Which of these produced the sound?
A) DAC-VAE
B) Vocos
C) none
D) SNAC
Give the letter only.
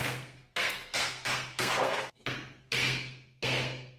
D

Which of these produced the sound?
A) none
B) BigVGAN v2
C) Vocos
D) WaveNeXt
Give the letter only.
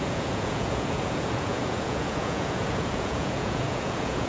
C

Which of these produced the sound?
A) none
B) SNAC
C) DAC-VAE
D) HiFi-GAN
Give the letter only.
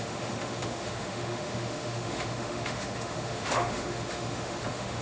C